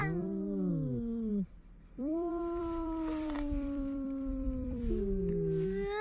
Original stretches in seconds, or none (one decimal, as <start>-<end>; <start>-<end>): 0.7-1.3; 4.9-6.0